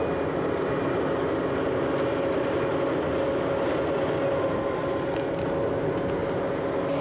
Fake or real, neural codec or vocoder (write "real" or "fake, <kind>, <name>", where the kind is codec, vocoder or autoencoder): real